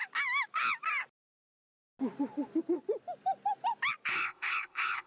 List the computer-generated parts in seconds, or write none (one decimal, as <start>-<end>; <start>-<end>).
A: 4.1-5.1